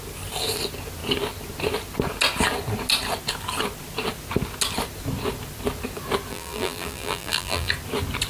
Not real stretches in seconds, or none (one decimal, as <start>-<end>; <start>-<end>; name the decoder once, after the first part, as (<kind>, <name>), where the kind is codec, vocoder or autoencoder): 6.3-7.7 (vocoder, BigVGAN v2)